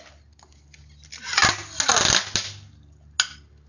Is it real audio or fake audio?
real